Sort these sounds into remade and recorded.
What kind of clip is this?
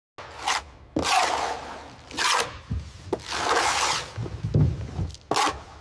recorded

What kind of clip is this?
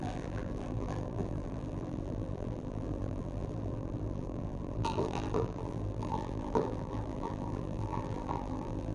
remade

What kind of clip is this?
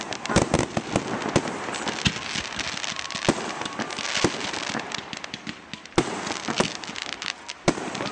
recorded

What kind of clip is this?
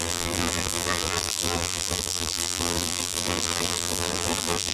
remade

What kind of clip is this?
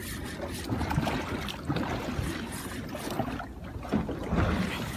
recorded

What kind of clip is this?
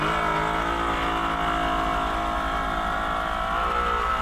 recorded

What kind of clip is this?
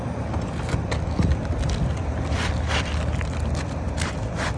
remade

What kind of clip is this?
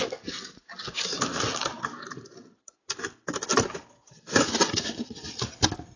recorded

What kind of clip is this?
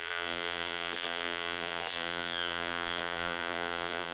remade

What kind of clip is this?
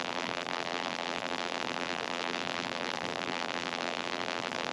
remade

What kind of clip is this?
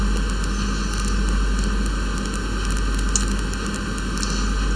recorded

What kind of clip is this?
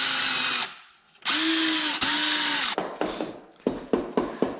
recorded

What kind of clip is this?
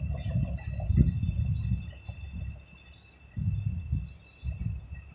recorded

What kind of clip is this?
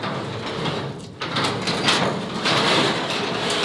recorded